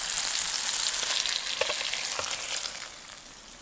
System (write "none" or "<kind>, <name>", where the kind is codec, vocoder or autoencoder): none